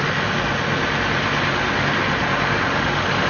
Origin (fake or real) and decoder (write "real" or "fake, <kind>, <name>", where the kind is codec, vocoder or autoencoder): real